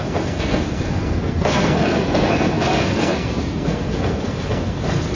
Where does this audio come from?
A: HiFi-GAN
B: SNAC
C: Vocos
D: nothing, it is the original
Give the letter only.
B